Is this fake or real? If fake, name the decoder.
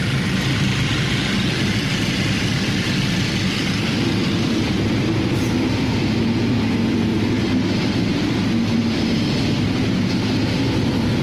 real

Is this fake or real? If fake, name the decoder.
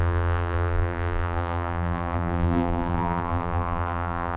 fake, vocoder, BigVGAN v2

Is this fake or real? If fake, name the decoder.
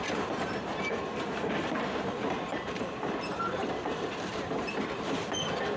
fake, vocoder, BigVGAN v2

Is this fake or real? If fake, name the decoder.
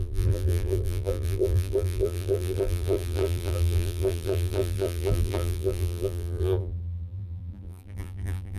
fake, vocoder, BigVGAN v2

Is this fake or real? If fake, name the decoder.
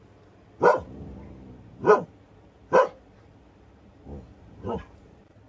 fake, vocoder, BigVGAN v2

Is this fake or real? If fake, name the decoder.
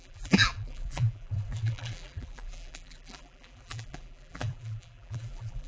fake, vocoder, BigVGAN v2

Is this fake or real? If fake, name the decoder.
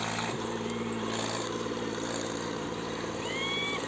fake, vocoder, BigVGAN v2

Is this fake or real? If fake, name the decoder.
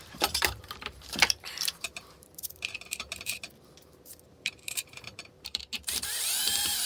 fake, vocoder, BigVGAN v2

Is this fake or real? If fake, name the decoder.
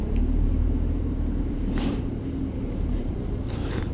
fake, vocoder, BigVGAN v2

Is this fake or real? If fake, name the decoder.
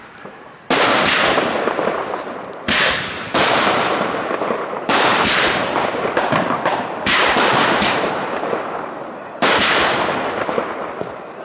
fake, vocoder, BigVGAN v2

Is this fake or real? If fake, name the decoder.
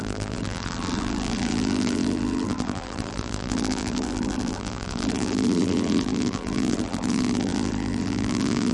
fake, vocoder, BigVGAN v2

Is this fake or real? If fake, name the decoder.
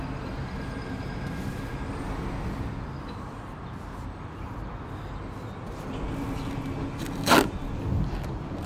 real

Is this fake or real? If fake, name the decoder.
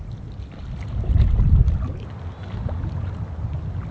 real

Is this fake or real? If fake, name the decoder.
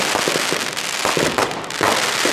real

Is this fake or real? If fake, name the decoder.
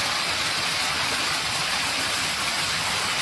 real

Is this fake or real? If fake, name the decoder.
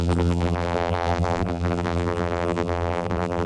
fake, vocoder, BigVGAN v2